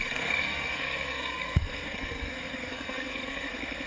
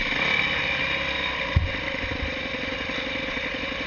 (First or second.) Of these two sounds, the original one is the second